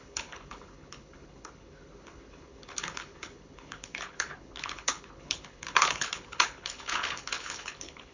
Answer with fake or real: fake